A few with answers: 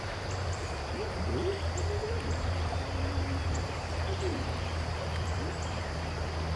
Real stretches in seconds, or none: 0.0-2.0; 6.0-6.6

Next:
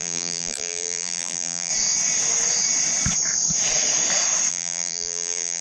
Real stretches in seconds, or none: 1.7-4.5